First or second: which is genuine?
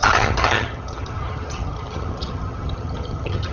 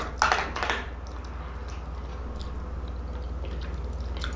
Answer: second